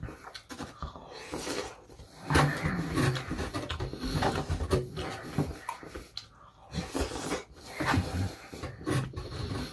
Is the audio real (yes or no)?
yes